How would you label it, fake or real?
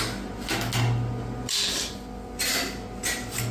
real